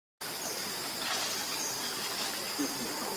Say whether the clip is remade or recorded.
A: recorded